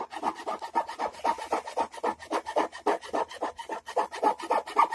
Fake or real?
real